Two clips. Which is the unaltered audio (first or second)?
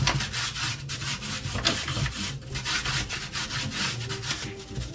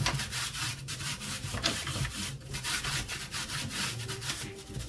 first